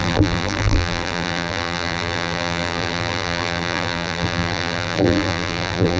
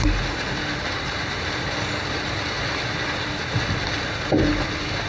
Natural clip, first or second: second